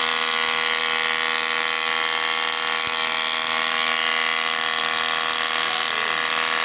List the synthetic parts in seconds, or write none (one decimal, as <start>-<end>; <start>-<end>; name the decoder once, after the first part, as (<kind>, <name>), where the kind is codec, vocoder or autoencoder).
none